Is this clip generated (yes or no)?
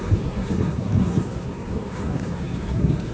yes